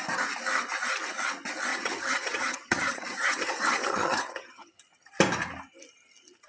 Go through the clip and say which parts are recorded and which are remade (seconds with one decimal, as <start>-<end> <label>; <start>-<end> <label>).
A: 0.0-1.7 recorded; 1.7-4.8 remade; 4.8-6.5 recorded